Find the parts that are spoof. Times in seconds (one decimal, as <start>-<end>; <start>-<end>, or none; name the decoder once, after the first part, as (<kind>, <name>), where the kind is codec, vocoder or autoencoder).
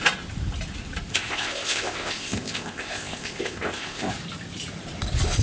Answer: 1.1-4.1 (codec, ZipCodec)